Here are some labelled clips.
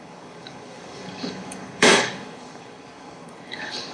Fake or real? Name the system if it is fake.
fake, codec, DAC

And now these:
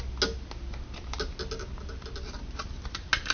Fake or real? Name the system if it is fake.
real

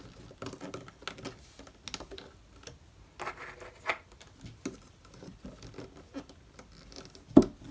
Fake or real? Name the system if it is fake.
real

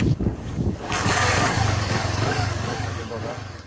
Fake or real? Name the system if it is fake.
fake, codec, DAC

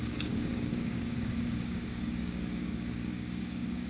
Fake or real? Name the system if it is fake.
fake, codec, DAC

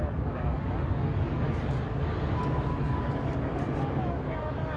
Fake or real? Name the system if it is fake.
fake, codec, DAC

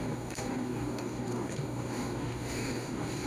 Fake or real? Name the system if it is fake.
fake, codec, DAC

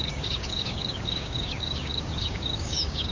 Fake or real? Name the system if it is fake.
fake, codec, DAC